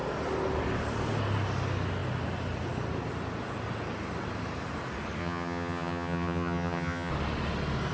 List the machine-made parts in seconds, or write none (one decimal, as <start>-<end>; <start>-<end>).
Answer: 5.2-7.1